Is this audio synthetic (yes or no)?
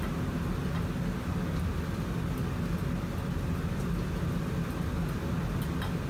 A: no